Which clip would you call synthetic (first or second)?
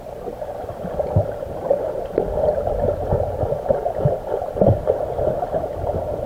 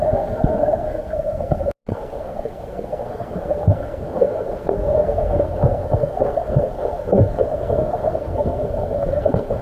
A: second